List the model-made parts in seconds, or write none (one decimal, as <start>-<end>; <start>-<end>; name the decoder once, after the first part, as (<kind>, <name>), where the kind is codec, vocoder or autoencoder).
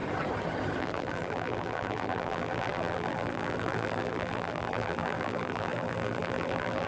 0.8-6.9 (vocoder, BigVGAN v2)